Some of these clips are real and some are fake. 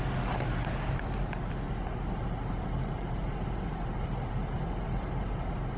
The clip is real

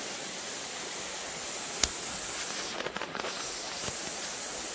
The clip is real